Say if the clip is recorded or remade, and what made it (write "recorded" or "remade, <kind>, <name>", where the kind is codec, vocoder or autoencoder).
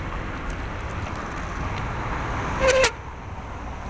recorded